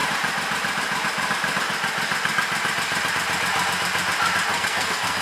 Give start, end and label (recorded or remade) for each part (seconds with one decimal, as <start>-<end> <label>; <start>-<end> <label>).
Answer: 0.0-4.5 recorded; 4.5-5.2 remade